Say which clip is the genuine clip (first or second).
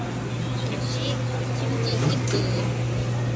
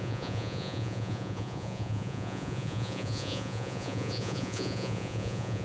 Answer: first